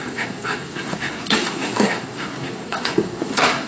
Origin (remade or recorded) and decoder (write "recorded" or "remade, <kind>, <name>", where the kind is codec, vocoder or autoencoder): remade, codec, SNAC